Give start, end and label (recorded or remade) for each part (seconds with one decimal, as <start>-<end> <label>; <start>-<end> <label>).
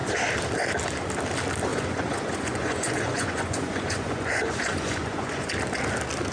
0.0-1.7 recorded; 1.7-5.5 remade; 5.5-6.3 recorded